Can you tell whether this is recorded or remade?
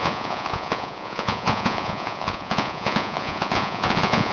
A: remade